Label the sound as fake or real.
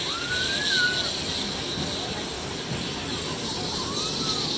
real